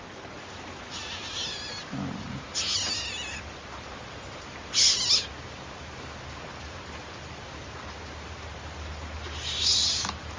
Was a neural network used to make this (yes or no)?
no